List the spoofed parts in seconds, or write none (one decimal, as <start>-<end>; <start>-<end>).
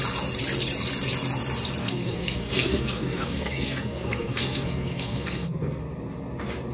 1.8-5.8